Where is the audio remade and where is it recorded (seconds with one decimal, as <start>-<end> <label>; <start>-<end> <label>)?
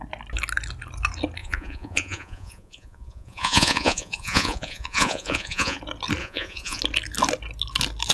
0.0-1.4 recorded; 1.4-5.8 remade; 5.8-6.2 recorded; 6.2-6.8 remade; 6.8-8.1 recorded